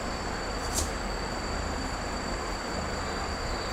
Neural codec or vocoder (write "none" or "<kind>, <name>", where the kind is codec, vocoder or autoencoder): none